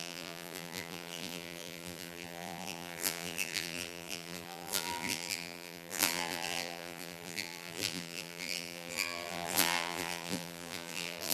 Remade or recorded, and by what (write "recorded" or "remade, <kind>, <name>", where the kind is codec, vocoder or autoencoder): remade, vocoder, BigVGAN v2